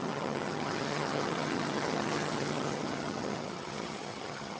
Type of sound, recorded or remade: remade